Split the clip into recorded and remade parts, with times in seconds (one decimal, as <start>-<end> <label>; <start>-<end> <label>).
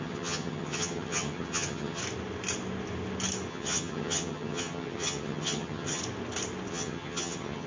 0.0-2.0 remade; 2.0-3.5 recorded; 3.5-6.0 remade; 6.0-6.7 recorded; 6.7-7.7 remade